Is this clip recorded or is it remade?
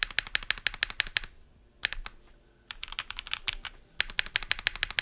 recorded